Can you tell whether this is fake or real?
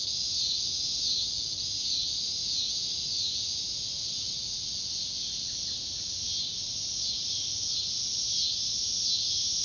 real